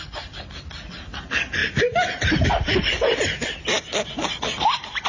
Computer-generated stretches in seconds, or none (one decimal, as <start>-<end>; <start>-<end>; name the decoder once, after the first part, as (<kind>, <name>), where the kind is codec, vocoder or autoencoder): 1.6-5.1 (vocoder, BigVGAN v2)